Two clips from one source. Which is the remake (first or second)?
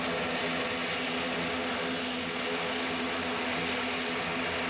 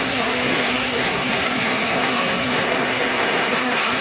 second